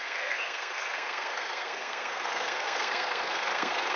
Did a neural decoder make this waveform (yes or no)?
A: yes